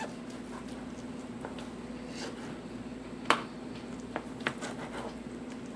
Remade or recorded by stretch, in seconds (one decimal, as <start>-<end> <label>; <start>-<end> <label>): 0.0-5.8 recorded